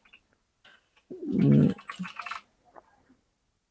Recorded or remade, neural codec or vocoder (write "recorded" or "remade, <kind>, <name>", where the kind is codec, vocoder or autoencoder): recorded